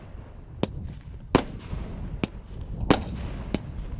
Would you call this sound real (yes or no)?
yes